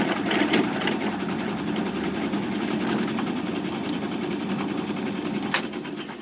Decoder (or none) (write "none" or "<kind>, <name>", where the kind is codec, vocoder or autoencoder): none